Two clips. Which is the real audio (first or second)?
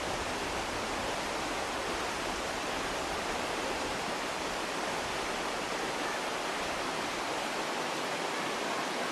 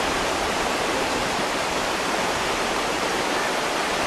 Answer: first